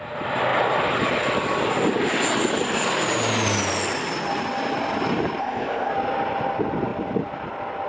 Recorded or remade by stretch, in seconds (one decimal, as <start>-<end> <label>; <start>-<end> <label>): 0.0-5.4 recorded; 5.4-5.9 remade; 5.9-7.9 recorded